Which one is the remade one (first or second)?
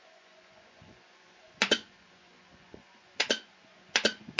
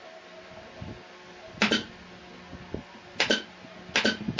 first